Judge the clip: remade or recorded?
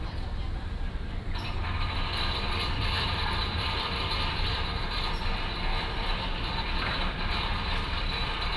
remade